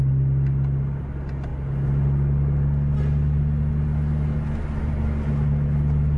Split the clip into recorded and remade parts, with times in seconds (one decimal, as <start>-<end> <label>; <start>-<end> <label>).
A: 0.0-6.2 recorded